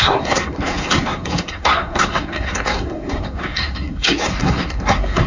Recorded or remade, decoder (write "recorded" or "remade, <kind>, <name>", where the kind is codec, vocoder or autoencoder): remade, codec, SNAC